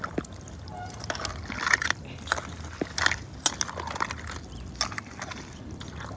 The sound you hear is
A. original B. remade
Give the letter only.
A